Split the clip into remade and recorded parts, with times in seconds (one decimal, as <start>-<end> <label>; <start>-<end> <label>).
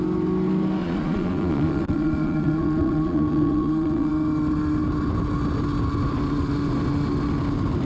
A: 0.0-0.8 recorded; 0.8-4.1 remade; 4.1-7.8 recorded